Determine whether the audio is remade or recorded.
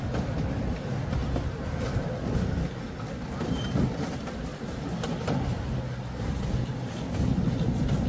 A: recorded